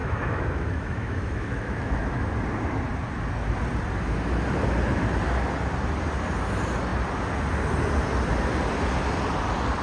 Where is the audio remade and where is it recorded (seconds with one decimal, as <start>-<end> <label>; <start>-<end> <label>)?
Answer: 0.0-2.3 remade; 2.3-9.8 recorded

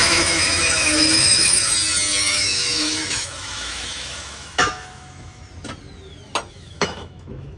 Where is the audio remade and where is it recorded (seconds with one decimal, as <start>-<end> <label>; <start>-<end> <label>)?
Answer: 0.0-1.7 remade; 1.7-2.2 recorded; 2.2-5.4 remade; 5.4-6.5 recorded; 6.5-7.6 remade